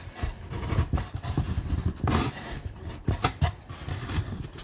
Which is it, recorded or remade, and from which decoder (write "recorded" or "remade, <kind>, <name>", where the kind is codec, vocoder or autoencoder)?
recorded